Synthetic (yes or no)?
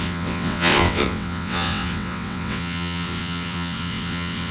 yes